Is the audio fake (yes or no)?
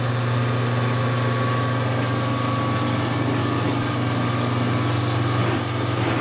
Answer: no